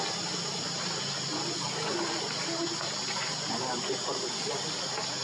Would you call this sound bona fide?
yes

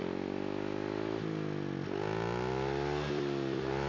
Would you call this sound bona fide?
yes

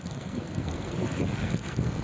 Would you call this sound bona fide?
no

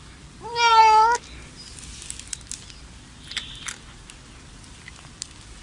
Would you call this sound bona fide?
yes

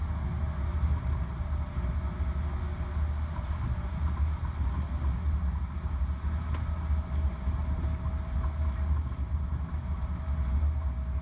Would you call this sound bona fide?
yes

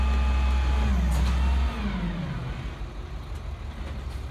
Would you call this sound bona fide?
yes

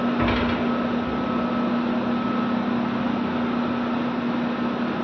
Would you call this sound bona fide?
yes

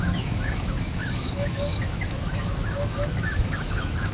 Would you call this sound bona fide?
no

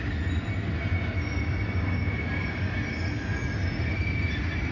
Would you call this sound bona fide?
yes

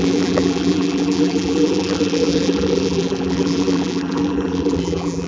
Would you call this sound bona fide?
no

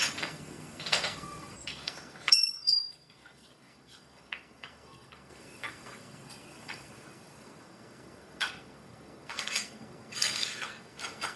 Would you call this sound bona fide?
no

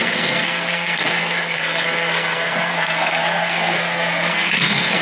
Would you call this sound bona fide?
no